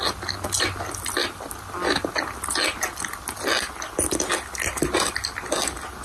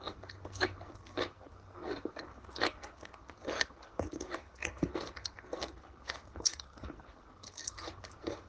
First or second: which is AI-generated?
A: second